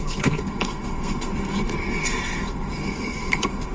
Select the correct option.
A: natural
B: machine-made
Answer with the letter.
B